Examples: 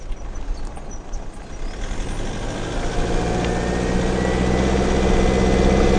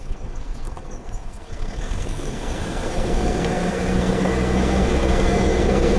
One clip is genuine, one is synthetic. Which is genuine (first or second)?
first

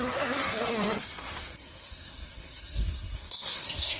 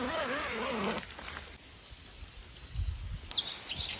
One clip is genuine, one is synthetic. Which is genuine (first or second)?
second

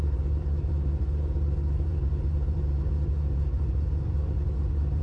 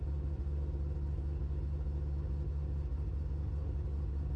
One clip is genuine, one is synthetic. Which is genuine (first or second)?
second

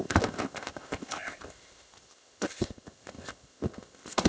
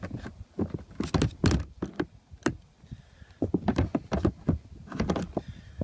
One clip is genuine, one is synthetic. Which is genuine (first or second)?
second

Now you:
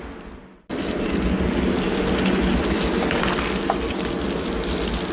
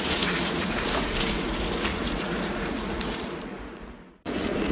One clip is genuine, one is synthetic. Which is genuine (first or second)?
first